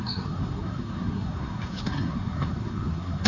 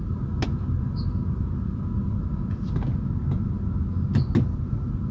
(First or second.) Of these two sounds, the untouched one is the second